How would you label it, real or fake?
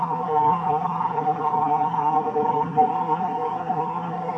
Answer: fake